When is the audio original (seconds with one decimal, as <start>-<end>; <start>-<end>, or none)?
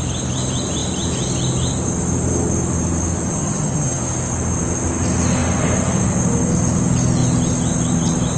0.0-3.3; 4.0-8.4